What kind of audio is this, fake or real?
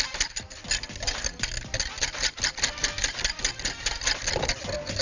real